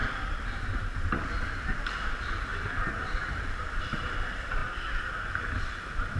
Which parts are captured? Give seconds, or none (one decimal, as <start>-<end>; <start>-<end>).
0.0-0.6; 2.5-3.3; 4.6-5.3